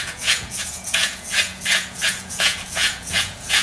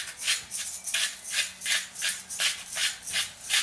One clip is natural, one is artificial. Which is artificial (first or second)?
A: first